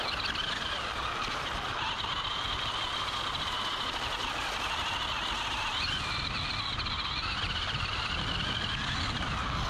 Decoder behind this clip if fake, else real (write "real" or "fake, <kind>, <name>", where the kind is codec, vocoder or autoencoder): real